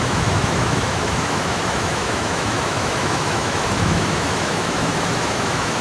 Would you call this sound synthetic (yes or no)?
yes